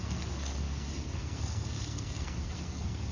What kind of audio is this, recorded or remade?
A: remade